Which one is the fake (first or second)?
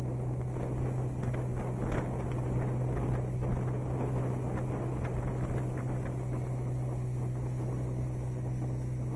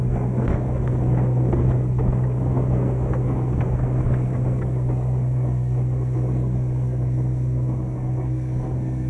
second